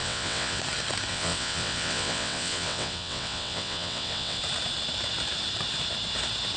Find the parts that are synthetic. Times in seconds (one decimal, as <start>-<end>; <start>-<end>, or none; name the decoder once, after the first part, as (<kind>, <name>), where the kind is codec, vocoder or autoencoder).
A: 0.0-0.6 (vocoder, WaveNeXt); 1.1-4.4